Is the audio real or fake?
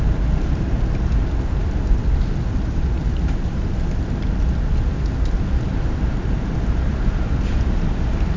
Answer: real